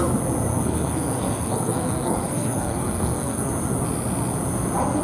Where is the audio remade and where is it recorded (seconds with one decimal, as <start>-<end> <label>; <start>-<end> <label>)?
0.0-0.5 recorded; 0.5-3.5 remade; 3.5-5.0 recorded